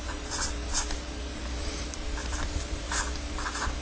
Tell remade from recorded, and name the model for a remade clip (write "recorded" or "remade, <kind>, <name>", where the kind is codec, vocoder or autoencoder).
remade, vocoder, BigVGAN v2